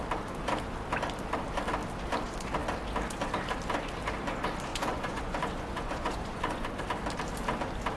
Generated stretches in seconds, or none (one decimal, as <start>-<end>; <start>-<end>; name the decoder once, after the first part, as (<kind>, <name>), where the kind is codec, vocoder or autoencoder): 4.7-6.8 (vocoder, Vocos)